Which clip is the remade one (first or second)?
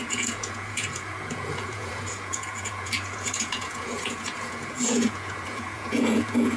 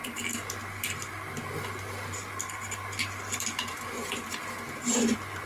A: first